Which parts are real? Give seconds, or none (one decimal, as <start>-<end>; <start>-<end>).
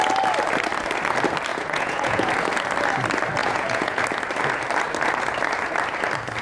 0.0-1.5; 2.3-3.4; 4.0-6.4